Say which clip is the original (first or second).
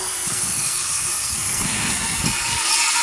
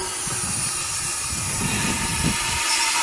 second